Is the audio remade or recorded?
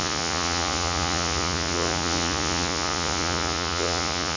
remade